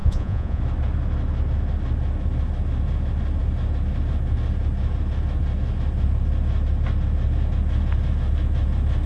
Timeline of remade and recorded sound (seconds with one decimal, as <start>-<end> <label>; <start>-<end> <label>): 0.0-0.6 remade; 0.6-9.1 recorded